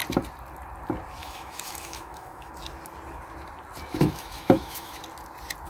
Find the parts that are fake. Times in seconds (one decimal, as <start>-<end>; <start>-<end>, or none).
1.2-2.5; 3.9-5.0